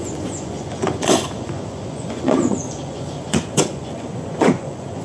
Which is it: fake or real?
fake